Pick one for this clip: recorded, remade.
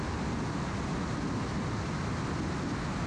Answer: recorded